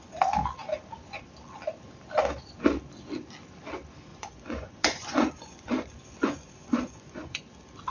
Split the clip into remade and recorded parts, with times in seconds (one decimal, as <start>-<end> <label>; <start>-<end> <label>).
0.0-4.1 recorded; 4.1-7.4 remade; 7.4-7.9 recorded